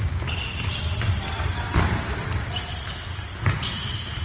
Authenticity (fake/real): real